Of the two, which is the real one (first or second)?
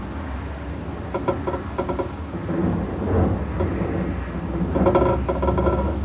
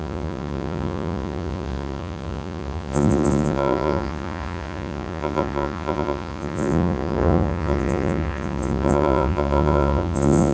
first